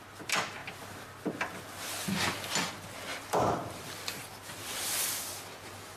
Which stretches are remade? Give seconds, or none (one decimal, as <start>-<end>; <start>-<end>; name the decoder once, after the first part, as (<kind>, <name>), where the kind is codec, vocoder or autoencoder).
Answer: 3.1-3.9 (vocoder, BigVGAN v2)